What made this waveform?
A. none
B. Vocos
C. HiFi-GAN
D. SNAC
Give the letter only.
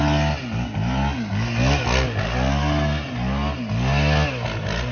A